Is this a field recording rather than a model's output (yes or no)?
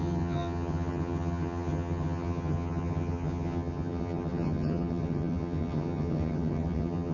no